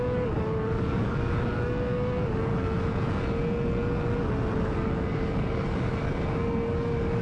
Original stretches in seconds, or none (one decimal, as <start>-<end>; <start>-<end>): 2.5-4.6